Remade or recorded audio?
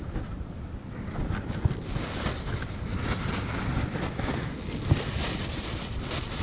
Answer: recorded